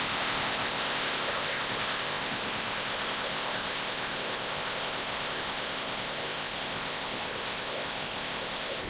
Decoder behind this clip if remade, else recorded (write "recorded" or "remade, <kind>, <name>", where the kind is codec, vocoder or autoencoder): remade, codec, ZipCodec